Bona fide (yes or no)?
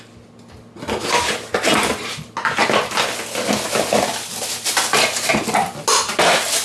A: yes